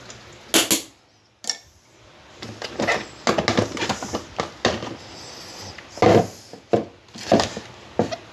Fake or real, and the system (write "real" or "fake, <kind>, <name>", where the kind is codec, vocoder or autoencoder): real